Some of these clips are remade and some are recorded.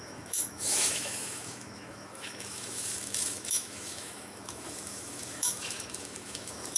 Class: remade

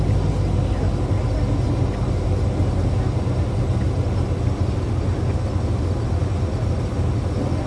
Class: recorded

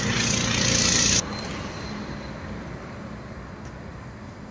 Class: recorded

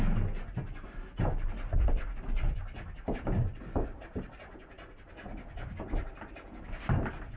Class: recorded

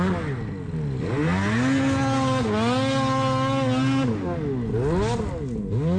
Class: recorded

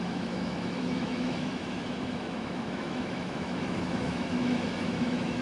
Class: remade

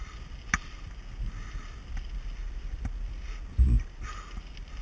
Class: recorded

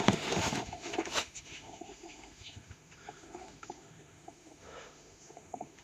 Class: remade